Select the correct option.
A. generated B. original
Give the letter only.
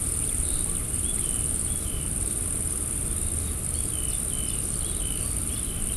B